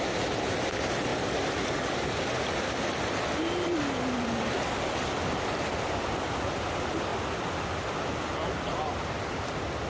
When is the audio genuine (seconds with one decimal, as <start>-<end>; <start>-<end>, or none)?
1.1-3.0; 7.1-8.5

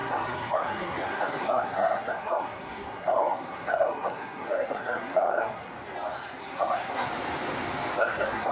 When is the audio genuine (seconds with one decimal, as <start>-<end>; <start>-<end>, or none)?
5.7-6.4; 7.1-8.0

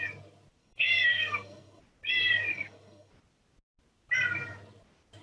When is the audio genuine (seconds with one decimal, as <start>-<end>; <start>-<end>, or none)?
0.0-0.6; 1.8-2.5; 3.1-5.2

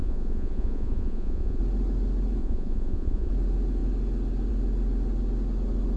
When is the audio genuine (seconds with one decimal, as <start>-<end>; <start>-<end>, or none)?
1.6-2.4; 3.3-6.0